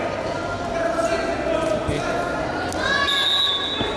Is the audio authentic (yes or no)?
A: yes